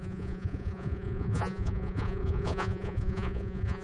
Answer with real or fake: fake